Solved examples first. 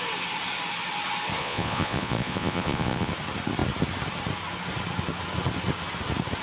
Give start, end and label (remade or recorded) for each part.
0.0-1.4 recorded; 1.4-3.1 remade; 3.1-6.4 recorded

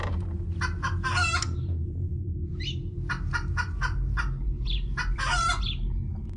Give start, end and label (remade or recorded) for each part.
0.0-6.4 recorded

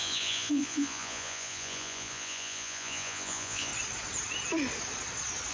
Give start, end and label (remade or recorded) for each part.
0.0-3.7 remade; 3.7-5.5 recorded